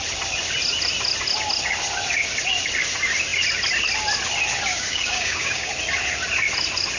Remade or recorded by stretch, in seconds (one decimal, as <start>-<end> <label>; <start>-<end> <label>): 0.0-4.7 recorded; 4.7-5.7 remade; 5.7-7.0 recorded